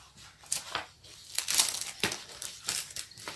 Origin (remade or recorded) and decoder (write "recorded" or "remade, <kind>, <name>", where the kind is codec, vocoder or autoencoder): remade, vocoder, BigVGAN v2